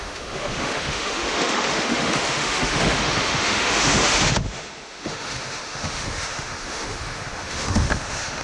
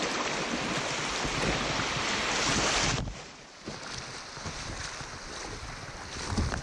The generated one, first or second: first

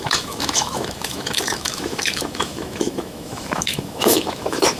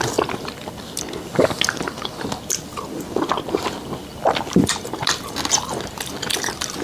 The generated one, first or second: first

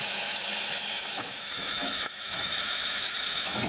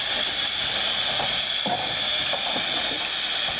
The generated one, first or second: first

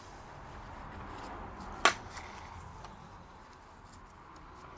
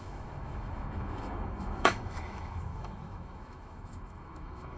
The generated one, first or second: second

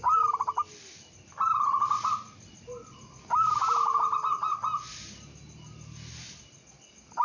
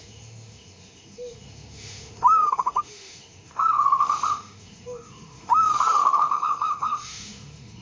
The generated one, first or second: second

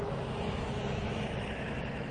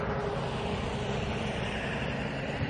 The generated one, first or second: first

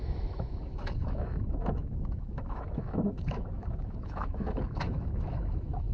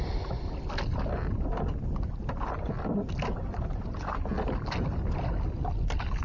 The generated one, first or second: first